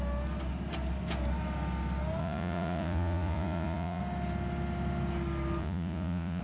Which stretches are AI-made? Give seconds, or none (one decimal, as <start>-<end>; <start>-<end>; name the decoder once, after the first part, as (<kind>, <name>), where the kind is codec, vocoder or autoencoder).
2.2-4.0 (vocoder, Vocos); 5.6-6.4